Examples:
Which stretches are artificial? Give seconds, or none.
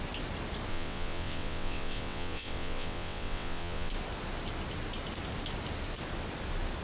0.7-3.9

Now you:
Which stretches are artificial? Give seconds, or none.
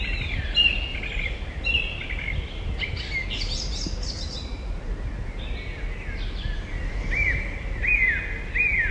none